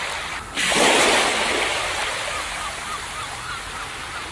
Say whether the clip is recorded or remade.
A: recorded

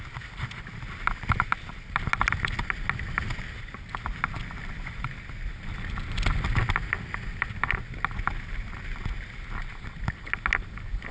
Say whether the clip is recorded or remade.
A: recorded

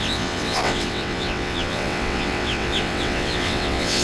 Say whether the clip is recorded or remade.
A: remade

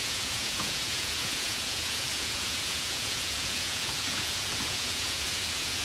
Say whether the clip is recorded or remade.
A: remade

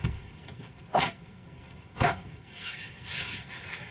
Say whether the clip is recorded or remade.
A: remade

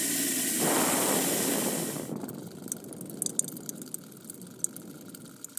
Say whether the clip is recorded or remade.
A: recorded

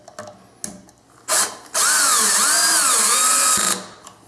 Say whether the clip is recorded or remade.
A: recorded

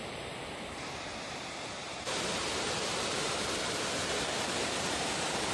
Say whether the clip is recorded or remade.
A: remade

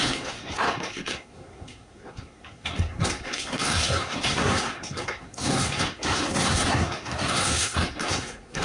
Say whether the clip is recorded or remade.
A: remade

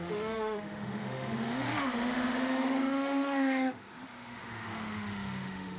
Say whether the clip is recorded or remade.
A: remade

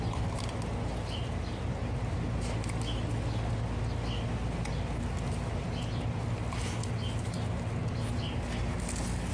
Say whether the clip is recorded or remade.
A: recorded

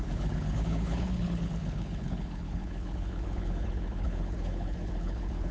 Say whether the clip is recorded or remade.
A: remade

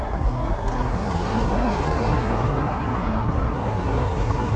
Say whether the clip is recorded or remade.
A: remade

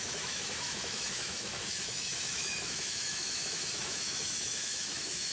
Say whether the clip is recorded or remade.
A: remade